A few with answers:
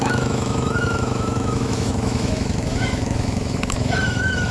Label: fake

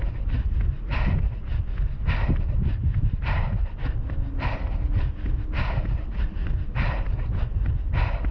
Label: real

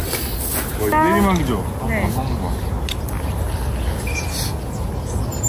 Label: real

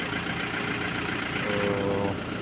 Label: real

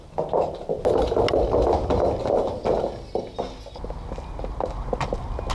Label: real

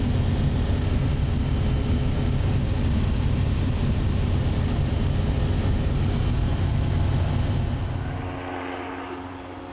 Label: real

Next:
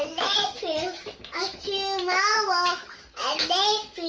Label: fake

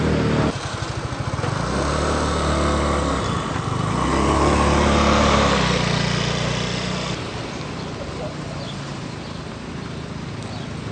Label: real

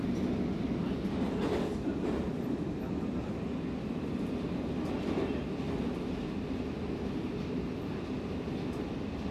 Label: real